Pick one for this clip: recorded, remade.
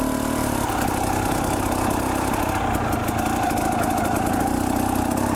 recorded